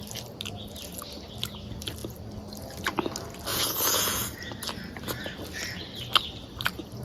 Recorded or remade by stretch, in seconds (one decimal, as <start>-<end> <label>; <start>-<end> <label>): 0.0-3.5 recorded; 3.5-4.2 remade; 4.2-7.0 recorded